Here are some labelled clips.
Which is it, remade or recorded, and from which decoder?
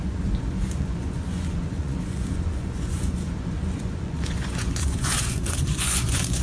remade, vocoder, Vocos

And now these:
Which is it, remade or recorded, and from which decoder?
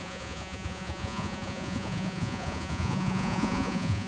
remade, vocoder, Vocos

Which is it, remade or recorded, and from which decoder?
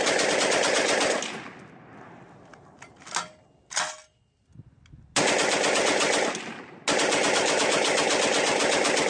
recorded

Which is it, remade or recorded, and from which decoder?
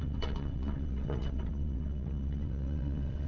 remade, vocoder, WaveNeXt